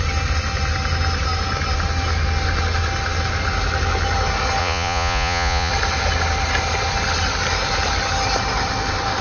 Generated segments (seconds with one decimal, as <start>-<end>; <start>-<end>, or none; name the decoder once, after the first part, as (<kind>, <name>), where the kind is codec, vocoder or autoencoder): 4.6-5.7 (vocoder, Vocos)